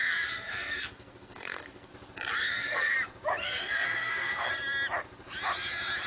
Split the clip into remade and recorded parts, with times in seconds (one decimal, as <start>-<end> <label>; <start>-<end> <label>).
0.0-1.9 remade; 1.9-2.4 recorded; 2.4-3.0 remade; 3.0-3.4 recorded; 3.4-4.5 remade; 4.5-6.1 recorded